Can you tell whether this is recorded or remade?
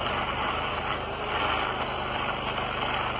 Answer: recorded